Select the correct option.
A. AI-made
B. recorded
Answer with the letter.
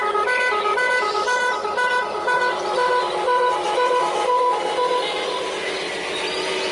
B